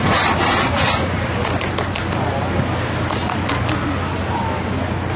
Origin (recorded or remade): recorded